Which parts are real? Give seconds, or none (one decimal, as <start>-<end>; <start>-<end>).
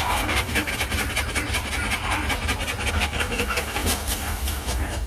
0.7-2.9